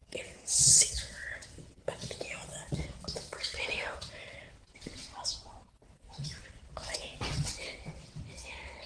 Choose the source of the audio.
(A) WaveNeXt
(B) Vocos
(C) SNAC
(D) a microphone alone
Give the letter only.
A